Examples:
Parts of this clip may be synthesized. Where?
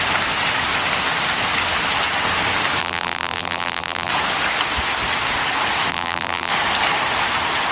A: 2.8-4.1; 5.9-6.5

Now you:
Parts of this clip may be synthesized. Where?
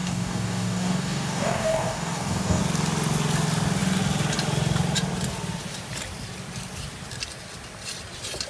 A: 0.0-2.6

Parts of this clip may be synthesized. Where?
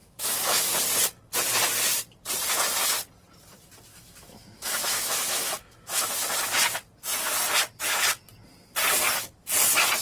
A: 0.0-0.7; 3.9-6.0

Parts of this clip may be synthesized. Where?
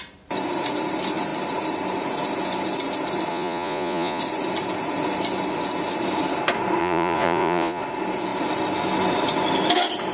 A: 3.3-4.2; 6.8-7.8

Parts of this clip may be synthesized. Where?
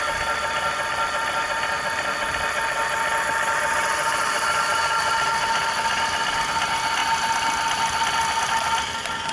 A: none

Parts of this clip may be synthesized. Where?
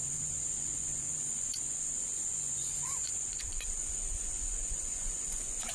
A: 0.0-5.7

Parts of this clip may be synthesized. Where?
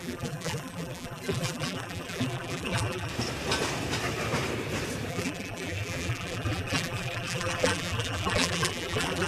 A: 0.0-3.1; 5.1-9.3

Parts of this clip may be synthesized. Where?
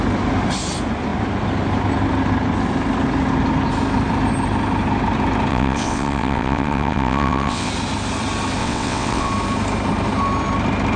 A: 5.5-7.7; 8.6-9.3